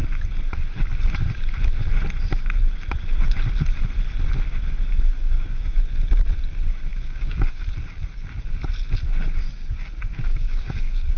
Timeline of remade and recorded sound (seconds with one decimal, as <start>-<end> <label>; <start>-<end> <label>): 0.0-4.9 recorded; 4.9-5.8 remade; 5.8-6.9 recorded; 6.9-7.6 remade; 7.6-10.1 recorded; 10.1-11.2 remade